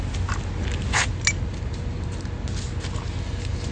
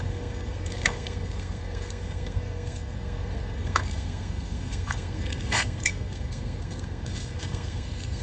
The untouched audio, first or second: first